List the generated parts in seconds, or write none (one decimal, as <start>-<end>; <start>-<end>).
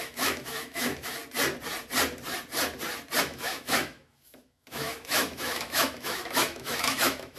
0.0-1.2; 3.2-7.4